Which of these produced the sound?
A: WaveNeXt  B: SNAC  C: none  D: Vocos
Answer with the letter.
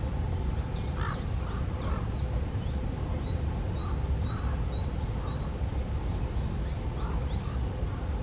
C